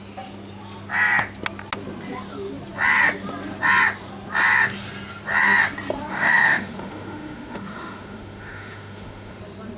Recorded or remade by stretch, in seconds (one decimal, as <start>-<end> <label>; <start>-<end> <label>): 0.0-6.1 recorded; 6.1-9.4 remade; 9.4-9.8 recorded